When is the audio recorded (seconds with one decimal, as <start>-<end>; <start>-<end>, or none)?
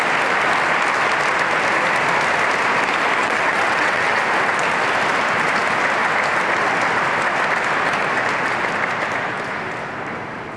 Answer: 0.0-3.2; 4.2-10.6